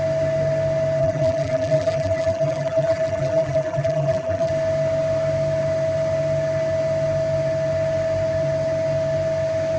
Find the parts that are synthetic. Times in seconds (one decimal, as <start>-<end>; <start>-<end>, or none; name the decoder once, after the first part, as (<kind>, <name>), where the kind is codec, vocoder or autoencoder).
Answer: 1.0-4.5 (vocoder, BigVGAN v2)